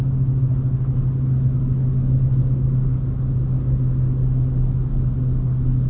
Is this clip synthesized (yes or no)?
no